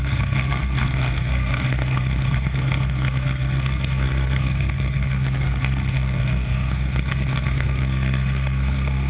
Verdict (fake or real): fake